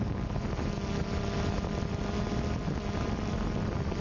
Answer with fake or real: real